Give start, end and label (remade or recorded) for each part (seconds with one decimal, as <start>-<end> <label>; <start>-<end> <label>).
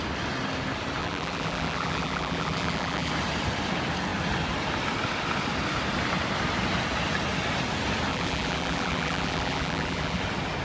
0.0-1.0 recorded; 1.0-3.1 remade; 3.1-8.1 recorded; 8.1-10.2 remade; 10.2-10.6 recorded